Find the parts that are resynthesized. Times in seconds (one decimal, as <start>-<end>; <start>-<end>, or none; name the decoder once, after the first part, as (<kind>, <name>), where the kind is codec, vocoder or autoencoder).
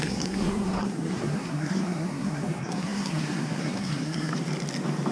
0.0-4.3 (codec, SNAC)